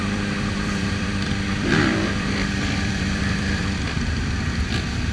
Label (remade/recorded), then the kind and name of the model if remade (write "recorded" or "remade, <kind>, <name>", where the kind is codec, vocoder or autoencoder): remade, vocoder, BigVGAN v2